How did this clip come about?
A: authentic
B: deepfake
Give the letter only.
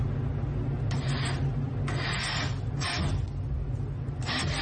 A